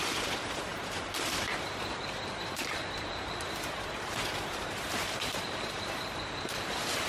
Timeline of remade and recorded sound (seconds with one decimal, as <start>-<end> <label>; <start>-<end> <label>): 0.0-7.1 remade

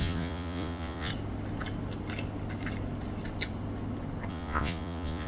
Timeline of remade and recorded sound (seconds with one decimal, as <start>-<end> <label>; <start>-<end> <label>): 0.0-1.1 remade; 1.1-4.3 recorded; 4.3-5.3 remade